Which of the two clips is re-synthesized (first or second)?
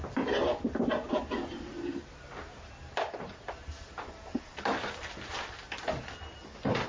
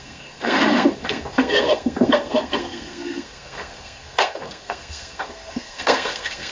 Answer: second